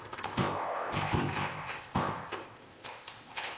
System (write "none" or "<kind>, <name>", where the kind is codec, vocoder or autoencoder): codec, ZipCodec